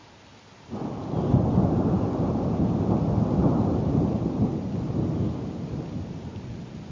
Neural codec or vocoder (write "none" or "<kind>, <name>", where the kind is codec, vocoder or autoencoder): none